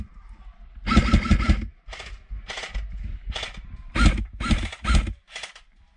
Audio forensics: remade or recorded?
recorded